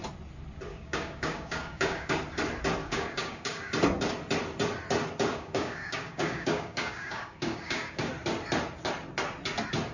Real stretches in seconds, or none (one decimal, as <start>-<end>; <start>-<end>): 0.0-0.7; 2.2-2.8; 3.7-5.3; 8.1-9.9